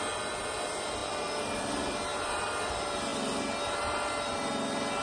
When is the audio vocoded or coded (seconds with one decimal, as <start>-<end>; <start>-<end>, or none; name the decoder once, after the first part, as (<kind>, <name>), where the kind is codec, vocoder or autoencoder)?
none